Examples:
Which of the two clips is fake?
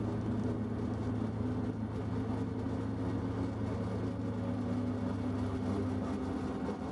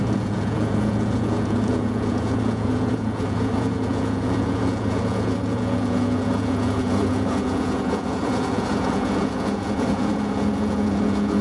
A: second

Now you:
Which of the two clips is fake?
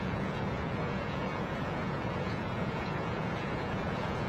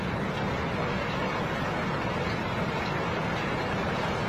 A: first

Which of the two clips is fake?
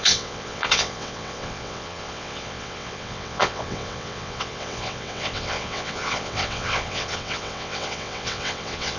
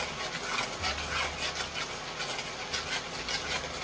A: first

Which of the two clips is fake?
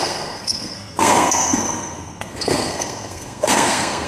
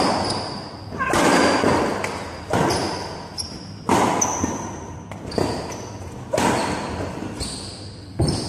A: first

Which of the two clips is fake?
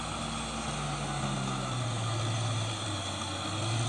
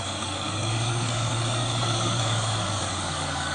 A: second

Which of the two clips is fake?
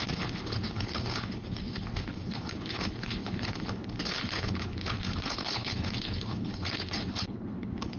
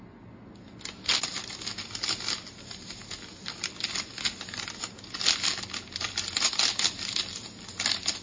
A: first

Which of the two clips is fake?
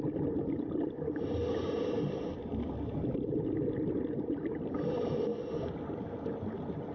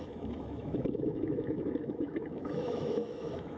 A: second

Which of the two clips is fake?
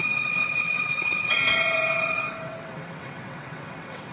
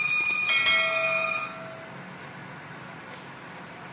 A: first